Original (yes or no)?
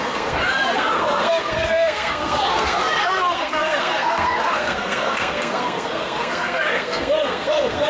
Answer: no